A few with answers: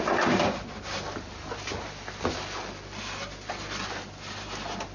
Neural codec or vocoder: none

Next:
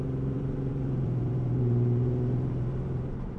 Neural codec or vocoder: vocoder, BigVGAN v2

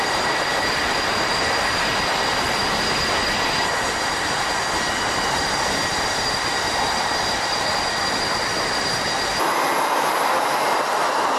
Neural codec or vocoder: none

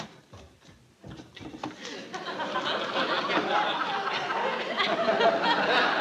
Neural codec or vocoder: none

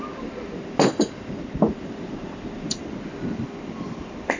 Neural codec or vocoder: vocoder, BigVGAN v2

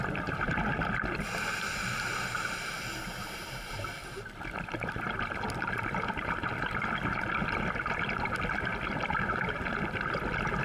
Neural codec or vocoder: none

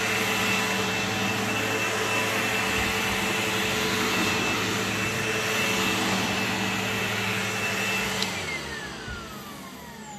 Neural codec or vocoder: none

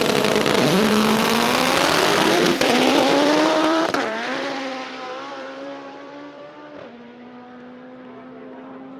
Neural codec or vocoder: vocoder, BigVGAN v2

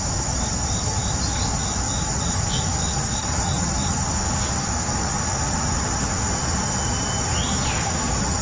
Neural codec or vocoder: none